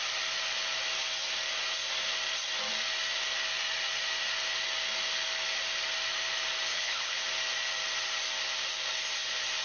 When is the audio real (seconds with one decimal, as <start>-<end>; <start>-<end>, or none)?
0.0-6.7; 7.2-9.6